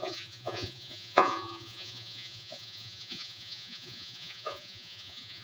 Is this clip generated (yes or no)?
yes